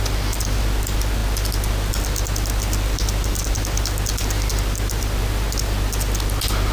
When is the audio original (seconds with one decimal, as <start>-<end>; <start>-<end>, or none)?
0.0-6.7